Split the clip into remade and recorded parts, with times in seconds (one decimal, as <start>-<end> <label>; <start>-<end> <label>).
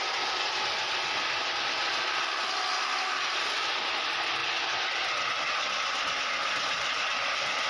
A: 0.0-7.7 recorded